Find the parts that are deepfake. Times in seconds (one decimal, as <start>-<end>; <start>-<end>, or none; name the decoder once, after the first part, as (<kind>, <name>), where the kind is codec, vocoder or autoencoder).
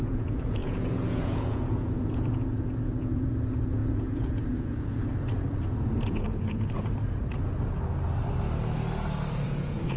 0.0-7.2 (vocoder, Vocos); 9.3-10.0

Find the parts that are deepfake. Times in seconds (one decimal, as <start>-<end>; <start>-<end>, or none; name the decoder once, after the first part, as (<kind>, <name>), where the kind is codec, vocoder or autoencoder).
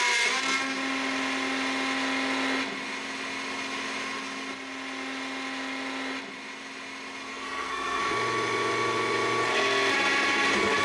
7.3-8.0 (codec, SNAC)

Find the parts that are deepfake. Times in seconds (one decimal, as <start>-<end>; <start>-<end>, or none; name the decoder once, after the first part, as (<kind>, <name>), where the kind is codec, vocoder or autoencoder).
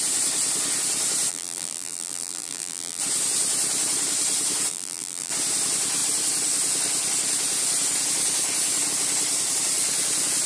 1.3-3.0 (vocoder, BigVGAN v2); 4.7-5.3